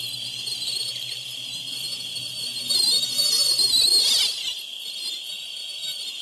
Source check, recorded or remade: recorded